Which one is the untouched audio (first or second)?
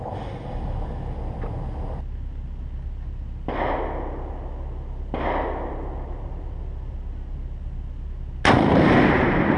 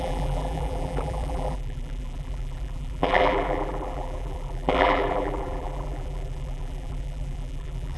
first